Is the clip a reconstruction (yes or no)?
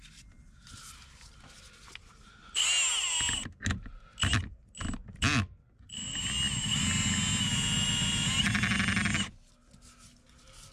no